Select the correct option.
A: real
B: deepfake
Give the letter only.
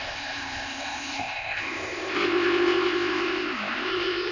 B